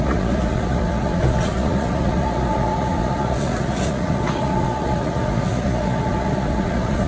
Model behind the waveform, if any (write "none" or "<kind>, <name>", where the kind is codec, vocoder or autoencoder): vocoder, Vocos